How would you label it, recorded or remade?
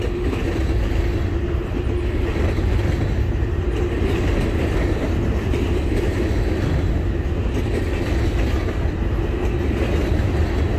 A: recorded